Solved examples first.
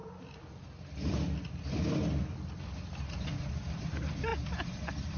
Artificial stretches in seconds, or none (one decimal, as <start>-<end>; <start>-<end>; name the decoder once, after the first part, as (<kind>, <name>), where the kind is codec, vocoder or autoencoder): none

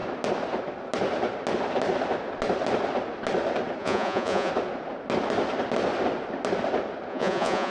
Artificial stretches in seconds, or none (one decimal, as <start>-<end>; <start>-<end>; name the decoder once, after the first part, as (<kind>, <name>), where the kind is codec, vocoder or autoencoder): 3.8-4.5 (vocoder, Vocos); 7.1-7.7

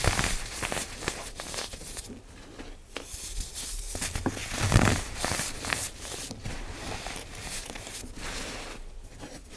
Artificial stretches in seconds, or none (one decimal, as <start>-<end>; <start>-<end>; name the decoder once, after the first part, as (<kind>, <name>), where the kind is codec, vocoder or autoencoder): 4.4-7.5 (vocoder, BigVGAN v2)